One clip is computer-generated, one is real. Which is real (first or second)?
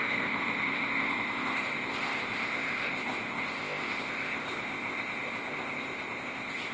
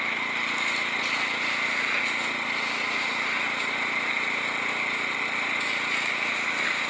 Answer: second